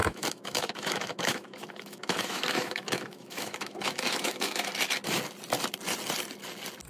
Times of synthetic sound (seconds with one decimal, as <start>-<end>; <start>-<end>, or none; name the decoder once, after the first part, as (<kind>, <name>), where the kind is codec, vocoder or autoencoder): 0.0-4.7 (autoencoder, DAC-VAE)